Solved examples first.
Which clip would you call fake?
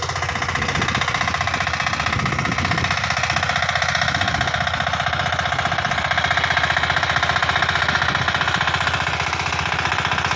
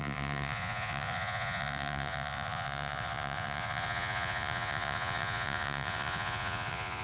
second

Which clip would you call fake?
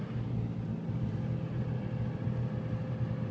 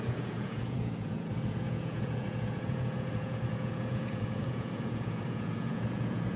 second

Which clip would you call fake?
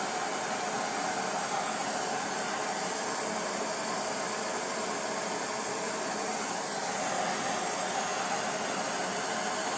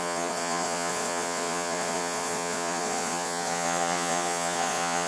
second